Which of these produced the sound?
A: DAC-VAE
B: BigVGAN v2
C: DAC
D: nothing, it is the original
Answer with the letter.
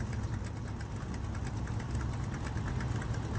D